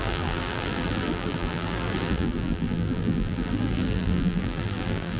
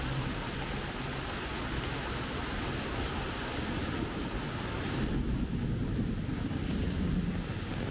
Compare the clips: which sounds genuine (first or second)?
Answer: second